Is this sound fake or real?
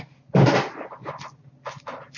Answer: real